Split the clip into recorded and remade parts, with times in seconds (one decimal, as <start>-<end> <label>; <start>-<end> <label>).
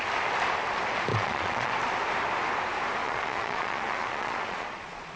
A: 0.0-1.1 recorded; 1.1-1.7 remade; 1.7-3.0 recorded; 3.0-5.2 remade